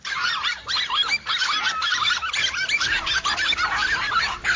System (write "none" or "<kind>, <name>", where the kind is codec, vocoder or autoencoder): vocoder, BigVGAN v2